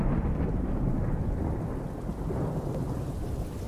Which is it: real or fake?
real